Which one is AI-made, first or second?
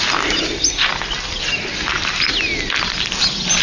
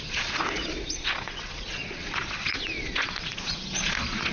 second